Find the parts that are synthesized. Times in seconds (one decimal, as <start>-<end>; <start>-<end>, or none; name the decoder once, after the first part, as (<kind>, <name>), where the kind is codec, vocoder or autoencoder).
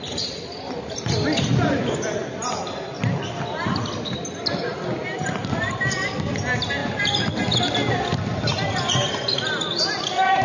none